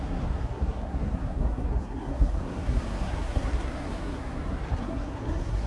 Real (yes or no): no